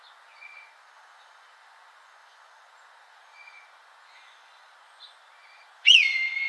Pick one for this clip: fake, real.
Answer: fake